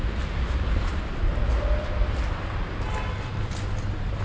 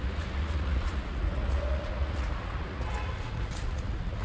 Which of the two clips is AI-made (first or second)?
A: second